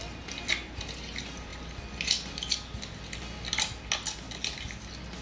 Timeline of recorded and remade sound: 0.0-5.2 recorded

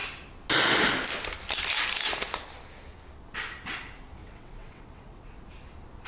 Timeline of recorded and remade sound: 0.0-4.2 recorded; 4.2-5.3 remade; 5.3-6.1 recorded

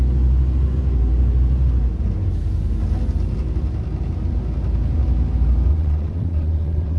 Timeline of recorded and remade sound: 0.0-5.7 recorded; 5.7-7.0 remade